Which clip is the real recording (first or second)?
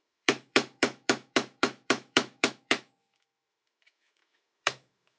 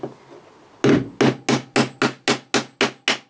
second